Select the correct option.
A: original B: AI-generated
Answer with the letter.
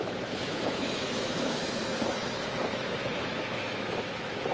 B